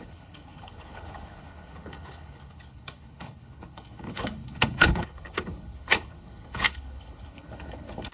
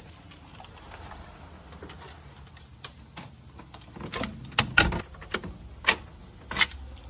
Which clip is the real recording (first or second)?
second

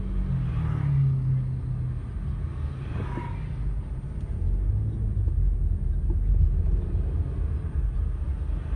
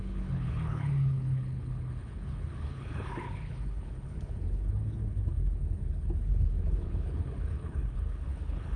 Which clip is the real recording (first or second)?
first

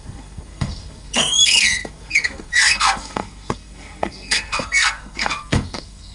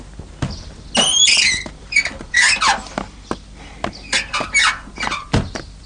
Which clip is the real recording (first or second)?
second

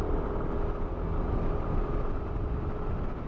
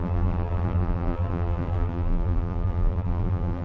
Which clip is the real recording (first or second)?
first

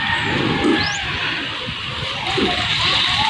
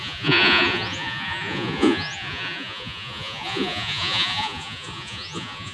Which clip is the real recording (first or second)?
first